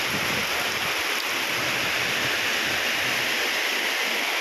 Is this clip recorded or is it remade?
recorded